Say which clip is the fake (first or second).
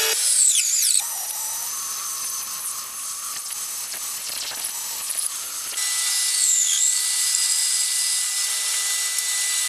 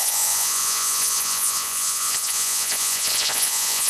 second